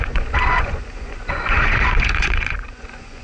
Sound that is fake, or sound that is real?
fake